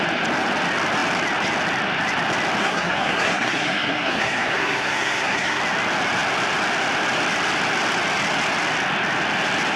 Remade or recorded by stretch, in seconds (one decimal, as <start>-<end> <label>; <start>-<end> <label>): 0.0-2.6 recorded; 2.6-5.6 remade; 5.6-9.8 recorded